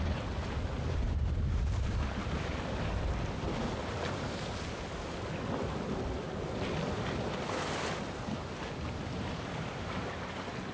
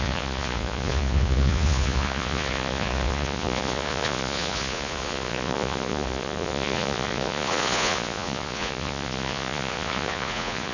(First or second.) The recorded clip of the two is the first